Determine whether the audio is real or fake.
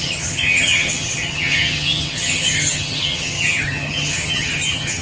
fake